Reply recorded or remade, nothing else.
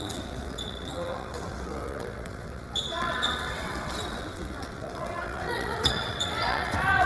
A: remade